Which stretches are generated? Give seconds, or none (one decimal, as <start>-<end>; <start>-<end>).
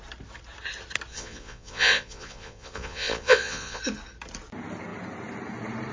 1.1-3.8